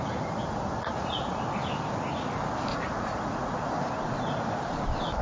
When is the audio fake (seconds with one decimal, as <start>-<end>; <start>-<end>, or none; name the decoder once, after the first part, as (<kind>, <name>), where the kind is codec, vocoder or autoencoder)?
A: 0.4-1.4 (vocoder, Vocos); 2.7-3.7